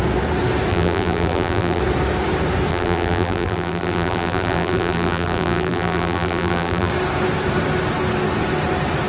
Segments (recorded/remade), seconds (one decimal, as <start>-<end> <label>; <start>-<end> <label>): 0.0-0.7 recorded; 0.7-1.8 remade; 1.8-2.7 recorded; 2.7-6.9 remade; 6.9-9.1 recorded